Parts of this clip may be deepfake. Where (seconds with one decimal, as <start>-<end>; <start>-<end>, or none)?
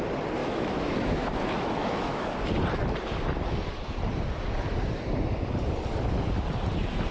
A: 0.4-2.4